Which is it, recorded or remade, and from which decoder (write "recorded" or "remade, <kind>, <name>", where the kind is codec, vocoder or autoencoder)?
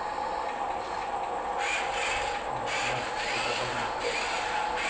recorded